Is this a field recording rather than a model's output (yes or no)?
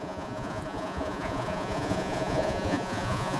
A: no